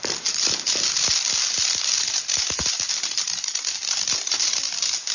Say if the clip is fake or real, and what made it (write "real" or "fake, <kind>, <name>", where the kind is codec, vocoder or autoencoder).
real